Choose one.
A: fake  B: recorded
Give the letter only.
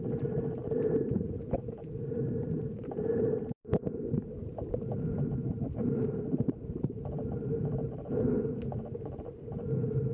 A